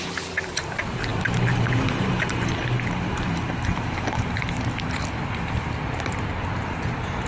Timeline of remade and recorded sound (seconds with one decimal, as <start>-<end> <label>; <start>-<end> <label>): 0.0-1.1 recorded; 1.1-5.0 remade; 5.0-7.3 recorded